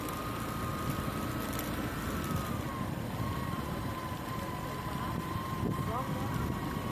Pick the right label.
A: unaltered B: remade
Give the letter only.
A